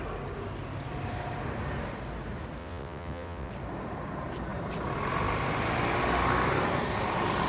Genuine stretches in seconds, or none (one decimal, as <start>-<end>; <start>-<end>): 0.0-2.6; 3.5-7.5